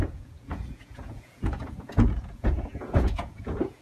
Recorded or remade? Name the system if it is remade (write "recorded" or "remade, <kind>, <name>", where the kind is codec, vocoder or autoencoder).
remade, vocoder, Vocos